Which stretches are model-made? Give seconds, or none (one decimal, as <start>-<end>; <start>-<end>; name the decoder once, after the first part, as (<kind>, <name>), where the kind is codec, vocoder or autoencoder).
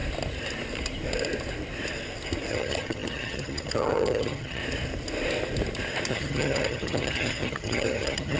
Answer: 2.5-4.6 (vocoder, HiFi-GAN); 6.1-8.4